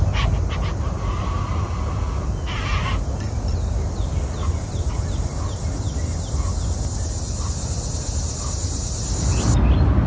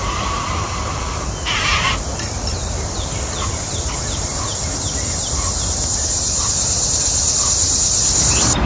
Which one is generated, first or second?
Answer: second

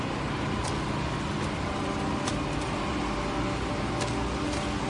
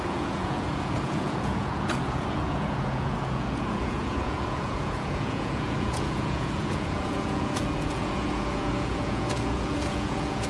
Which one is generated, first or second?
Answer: second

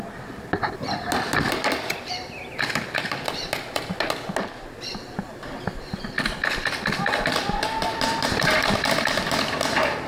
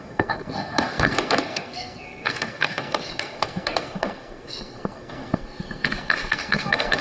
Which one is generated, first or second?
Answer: second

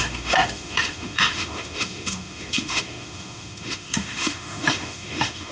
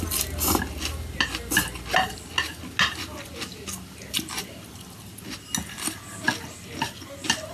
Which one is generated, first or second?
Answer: first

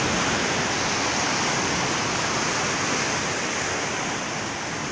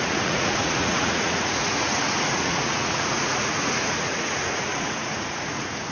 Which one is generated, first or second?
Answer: second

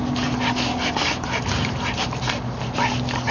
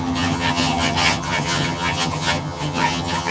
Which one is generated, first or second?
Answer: second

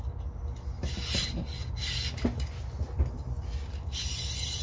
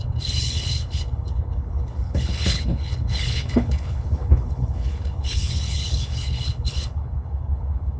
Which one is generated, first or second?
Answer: second